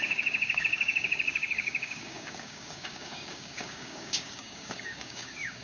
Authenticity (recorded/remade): remade